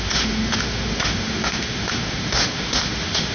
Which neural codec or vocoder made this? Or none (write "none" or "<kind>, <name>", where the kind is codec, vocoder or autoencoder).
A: autoencoder, DAC-VAE